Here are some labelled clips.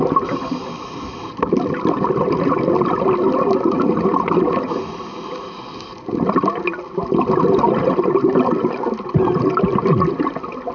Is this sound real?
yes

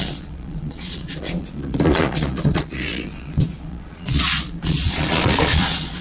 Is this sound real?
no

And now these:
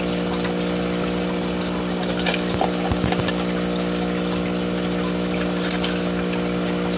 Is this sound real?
yes